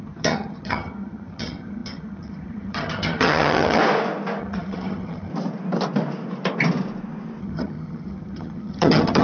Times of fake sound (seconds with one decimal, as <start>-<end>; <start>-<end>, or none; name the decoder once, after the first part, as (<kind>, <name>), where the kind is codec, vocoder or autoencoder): 0.0-3.8 (vocoder, HiFi-GAN); 4.4-5.3; 7.4-9.2